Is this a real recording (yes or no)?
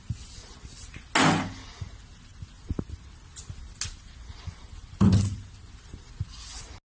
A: yes